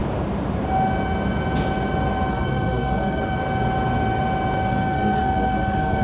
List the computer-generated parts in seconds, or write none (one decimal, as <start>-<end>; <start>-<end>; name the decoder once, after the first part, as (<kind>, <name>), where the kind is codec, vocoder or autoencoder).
2.3-3.4 (codec, SNAC); 4.7-6.0